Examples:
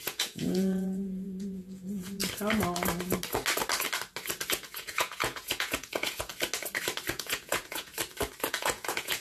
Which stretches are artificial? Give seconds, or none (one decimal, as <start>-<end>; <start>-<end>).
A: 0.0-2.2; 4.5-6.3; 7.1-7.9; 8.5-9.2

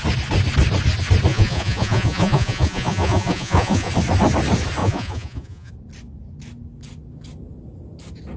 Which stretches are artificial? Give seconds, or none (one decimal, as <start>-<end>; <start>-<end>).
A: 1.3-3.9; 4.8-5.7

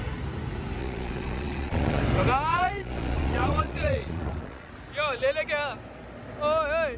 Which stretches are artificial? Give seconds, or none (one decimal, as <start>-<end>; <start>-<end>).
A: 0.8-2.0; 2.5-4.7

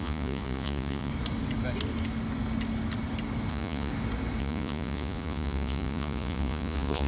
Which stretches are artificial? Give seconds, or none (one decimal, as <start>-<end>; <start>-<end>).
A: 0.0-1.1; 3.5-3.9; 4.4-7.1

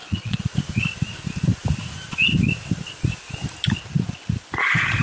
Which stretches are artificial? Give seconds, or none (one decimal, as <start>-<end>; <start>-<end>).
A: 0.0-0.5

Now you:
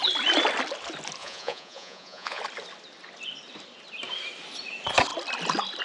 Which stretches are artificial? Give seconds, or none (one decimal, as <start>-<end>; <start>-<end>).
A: 1.2-2.4